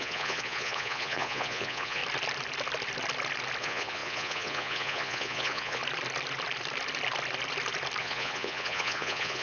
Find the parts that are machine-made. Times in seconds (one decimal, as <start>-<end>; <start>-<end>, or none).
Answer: 0.0-2.0; 3.6-5.8; 8.0-9.4